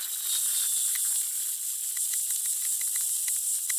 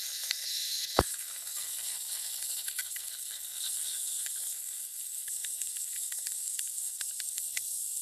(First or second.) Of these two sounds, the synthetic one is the second